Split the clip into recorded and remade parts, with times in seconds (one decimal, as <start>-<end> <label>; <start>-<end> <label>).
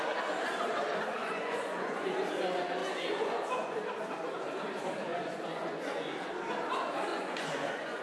0.0-1.2 recorded; 1.2-2.2 remade; 2.2-2.8 recorded; 2.8-3.8 remade; 3.8-5.1 recorded; 5.1-6.3 remade; 6.3-7.1 recorded; 7.1-8.0 remade